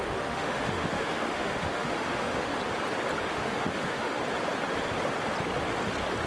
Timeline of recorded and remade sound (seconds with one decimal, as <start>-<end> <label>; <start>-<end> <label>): 0.0-2.5 remade; 2.5-3.2 recorded; 3.2-4.2 remade; 4.2-6.3 recorded

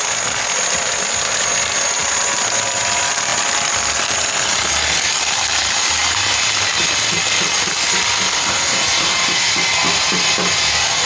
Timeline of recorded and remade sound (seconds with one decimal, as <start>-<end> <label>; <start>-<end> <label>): 0.0-11.1 recorded

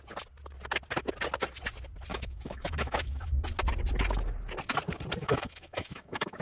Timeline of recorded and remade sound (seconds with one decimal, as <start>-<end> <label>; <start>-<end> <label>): 0.0-2.1 recorded; 2.1-3.4 remade; 3.4-5.2 recorded; 5.2-6.4 remade

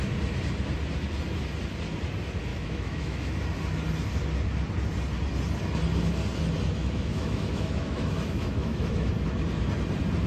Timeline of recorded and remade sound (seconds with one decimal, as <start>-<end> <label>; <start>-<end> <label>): 0.0-2.5 recorded; 2.5-3.4 remade; 3.4-6.8 recorded; 6.8-9.1 remade; 9.1-10.3 recorded

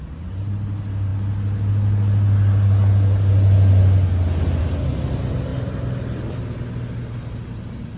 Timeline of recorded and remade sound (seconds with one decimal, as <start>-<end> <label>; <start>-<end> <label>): 0.0-8.0 recorded

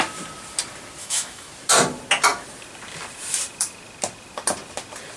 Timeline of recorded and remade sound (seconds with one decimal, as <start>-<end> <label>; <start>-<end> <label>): 0.0-1.0 recorded; 1.0-1.5 remade; 1.5-5.2 recorded

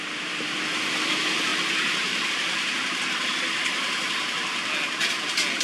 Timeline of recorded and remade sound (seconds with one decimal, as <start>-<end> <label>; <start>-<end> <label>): 0.0-5.6 recorded

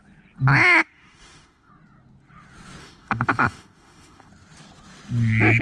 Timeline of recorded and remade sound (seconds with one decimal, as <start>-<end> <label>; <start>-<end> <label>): 0.0-0.8 recorded; 0.8-1.7 remade; 1.7-2.8 recorded; 2.8-4.3 remade; 4.3-5.6 recorded